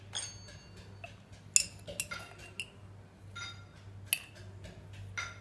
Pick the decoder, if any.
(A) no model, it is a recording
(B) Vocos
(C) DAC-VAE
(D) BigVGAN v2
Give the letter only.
A